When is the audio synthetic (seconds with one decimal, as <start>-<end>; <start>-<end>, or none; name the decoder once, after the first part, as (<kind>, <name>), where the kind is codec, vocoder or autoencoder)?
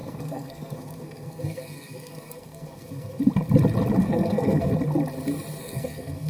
0.0-3.2 (codec, SNAC); 4.0-4.7; 5.6-6.3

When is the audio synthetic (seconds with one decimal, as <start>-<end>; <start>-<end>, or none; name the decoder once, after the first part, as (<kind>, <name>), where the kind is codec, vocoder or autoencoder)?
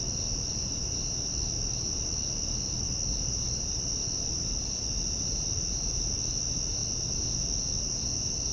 none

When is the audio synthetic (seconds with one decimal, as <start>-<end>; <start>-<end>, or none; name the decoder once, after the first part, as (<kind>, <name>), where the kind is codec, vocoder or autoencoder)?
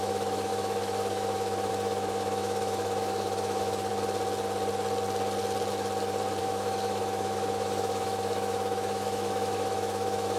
0.0-3.9 (autoencoder, DAC-VAE); 6.4-10.4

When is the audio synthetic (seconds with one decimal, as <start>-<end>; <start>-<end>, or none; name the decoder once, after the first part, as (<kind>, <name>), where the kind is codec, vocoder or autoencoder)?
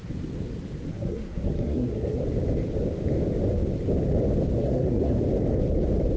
0.9-2.2 (codec, SNAC); 4.6-5.2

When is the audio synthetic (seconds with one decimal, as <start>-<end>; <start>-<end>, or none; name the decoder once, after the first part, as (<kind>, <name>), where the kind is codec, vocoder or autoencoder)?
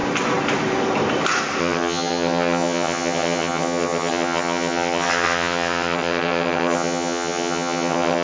1.6-8.2 (vocoder, HiFi-GAN)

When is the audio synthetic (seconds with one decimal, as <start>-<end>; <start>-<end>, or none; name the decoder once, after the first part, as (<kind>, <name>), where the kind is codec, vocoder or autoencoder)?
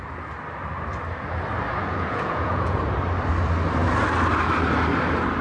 1.8-2.8 (vocoder, Vocos)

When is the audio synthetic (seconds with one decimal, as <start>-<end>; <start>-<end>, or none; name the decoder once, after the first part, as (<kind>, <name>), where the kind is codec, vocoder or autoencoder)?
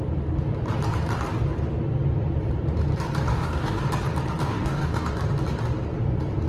3.3-3.9 (codec, DAC); 4.4-5.1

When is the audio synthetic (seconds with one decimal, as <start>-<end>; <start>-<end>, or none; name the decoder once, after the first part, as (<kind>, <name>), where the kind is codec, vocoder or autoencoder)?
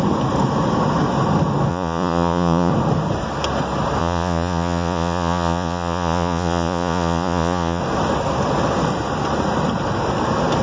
1.7-2.7 (vocoder, Vocos); 4.0-7.8